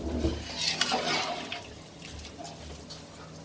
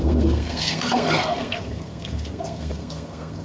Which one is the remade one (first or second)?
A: second